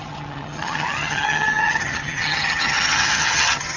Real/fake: fake